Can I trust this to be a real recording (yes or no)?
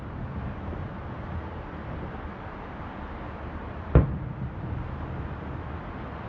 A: yes